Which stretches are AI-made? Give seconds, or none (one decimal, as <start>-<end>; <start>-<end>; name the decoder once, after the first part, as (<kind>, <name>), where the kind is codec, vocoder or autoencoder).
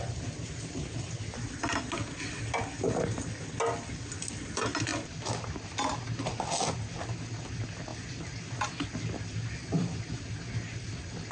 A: none